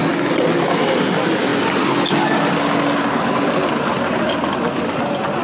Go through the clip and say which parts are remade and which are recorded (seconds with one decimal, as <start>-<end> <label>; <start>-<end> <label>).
0.0-5.4 recorded